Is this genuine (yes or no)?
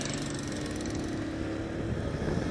yes